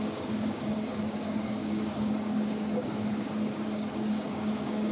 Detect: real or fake fake